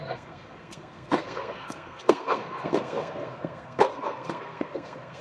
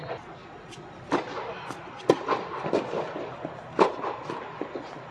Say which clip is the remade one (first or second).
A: first